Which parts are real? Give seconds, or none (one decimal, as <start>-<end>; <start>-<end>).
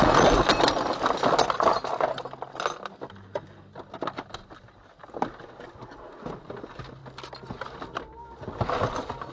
0.0-9.3